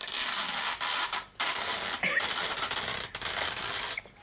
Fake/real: real